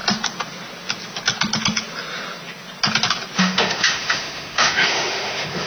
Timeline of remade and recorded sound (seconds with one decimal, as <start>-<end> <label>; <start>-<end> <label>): 0.0-3.4 recorded; 3.4-5.7 remade